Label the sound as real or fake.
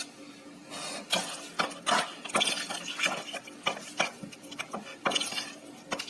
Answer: real